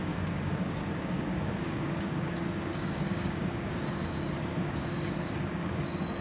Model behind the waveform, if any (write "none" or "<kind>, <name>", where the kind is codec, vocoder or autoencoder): codec, DAC